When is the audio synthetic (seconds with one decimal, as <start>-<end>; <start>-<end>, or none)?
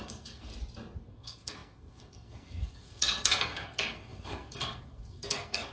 0.0-0.5; 1.1-5.7